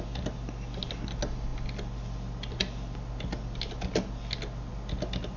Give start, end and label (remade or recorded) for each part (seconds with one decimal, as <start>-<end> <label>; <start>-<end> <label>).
0.0-5.4 recorded